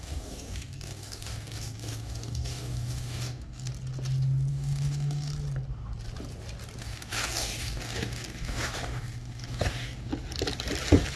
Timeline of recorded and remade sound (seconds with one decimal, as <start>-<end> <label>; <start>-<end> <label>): 0.0-3.7 remade; 3.7-4.5 recorded; 4.5-5.3 remade; 5.3-6.8 recorded; 6.8-10.1 remade; 10.1-11.2 recorded